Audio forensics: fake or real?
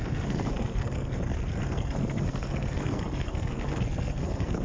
fake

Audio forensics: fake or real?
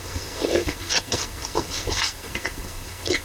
fake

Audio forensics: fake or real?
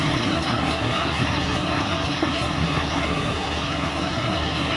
fake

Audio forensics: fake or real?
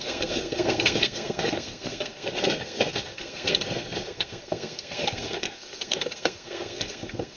fake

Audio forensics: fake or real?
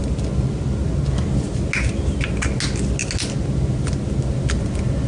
real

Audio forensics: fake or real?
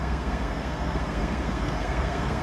fake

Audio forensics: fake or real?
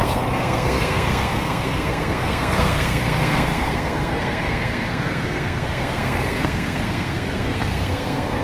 fake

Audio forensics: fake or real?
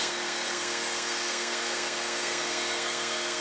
fake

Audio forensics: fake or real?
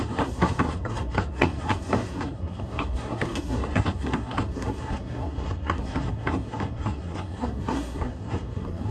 fake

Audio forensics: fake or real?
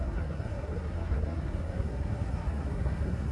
fake